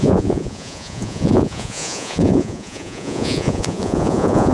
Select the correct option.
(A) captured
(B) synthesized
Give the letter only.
B